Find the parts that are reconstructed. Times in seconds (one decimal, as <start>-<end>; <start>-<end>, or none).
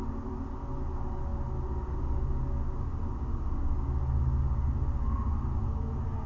none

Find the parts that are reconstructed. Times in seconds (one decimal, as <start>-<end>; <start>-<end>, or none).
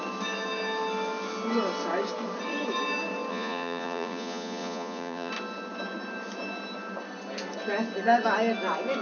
3.3-5.3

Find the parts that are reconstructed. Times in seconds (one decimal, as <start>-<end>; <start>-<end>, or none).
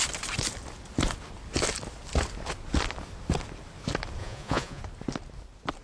4.2-4.8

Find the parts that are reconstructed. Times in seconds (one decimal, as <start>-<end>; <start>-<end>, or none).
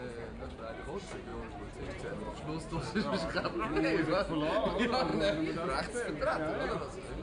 none